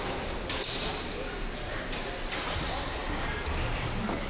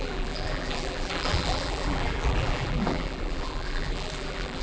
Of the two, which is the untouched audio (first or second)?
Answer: first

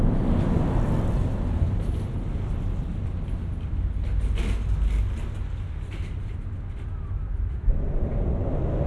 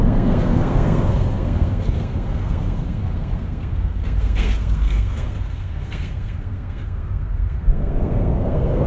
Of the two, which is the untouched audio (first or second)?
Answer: first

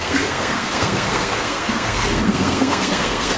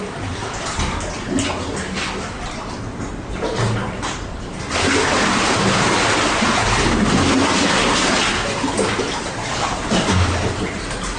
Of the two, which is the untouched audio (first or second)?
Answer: second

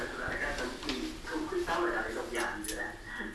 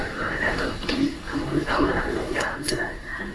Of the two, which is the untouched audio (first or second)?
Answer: first